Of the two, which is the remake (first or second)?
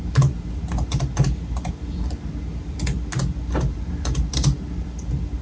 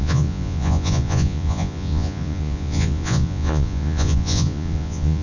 second